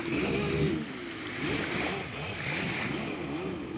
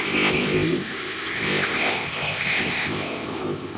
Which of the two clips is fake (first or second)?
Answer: second